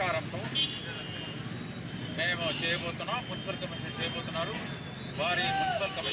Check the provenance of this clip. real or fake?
real